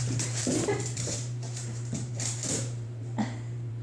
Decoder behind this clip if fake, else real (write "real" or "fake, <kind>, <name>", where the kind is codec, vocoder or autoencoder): fake, vocoder, BigVGAN v2